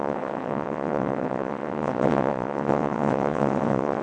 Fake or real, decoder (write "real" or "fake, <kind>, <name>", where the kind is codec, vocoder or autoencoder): fake, vocoder, WaveNeXt